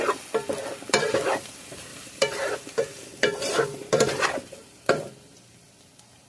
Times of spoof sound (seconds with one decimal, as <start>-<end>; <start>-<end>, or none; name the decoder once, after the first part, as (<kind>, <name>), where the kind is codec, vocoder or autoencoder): 1.9-4.2 (vocoder, BigVGAN v2)

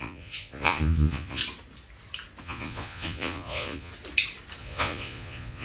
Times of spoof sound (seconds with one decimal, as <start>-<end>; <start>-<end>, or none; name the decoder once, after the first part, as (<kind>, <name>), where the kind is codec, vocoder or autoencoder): 0.0-1.4 (vocoder, Vocos); 2.4-3.9; 4.6-5.6

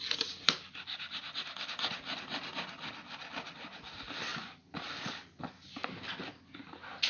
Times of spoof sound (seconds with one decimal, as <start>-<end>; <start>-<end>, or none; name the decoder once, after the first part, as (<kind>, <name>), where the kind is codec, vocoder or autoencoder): none

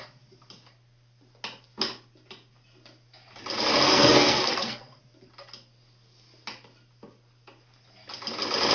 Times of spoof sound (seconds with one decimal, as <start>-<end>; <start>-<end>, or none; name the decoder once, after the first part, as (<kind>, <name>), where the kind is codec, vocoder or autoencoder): 3.9-5.0 (codec, SNAC)

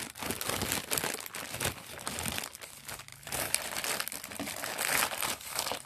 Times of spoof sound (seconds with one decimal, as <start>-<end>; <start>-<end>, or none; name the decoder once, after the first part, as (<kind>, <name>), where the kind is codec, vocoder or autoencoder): 3.1-3.7 (vocoder, BigVGAN v2); 5.0-5.9

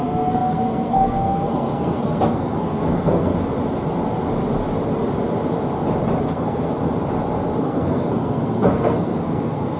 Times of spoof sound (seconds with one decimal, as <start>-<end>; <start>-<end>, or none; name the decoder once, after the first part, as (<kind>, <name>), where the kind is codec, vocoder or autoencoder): 0.0-3.3 (codec, SNAC); 6.3-6.7; 7.6-9.8